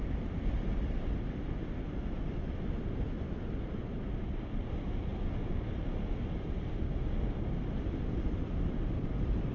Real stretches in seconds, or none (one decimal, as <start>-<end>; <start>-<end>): 0.0-9.5